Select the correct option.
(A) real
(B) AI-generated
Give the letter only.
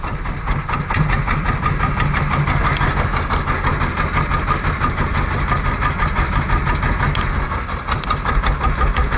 A